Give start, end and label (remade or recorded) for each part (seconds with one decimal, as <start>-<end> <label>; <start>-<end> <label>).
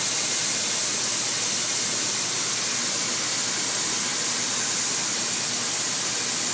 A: 0.0-6.5 recorded